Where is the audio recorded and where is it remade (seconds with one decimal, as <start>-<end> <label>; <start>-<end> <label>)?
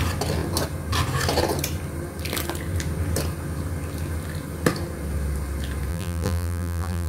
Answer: 0.0-5.9 recorded; 5.9-7.1 remade